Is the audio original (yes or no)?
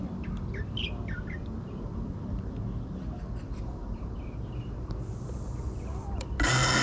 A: yes